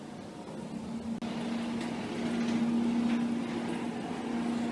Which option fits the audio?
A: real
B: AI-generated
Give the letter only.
A